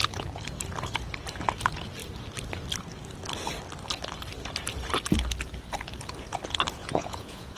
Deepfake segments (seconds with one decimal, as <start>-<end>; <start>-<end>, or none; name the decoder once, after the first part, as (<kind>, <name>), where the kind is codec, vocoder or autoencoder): 6.8-7.6 (vocoder, Vocos)